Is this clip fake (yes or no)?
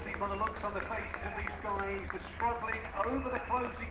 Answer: yes